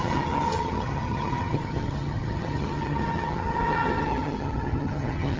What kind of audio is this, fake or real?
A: fake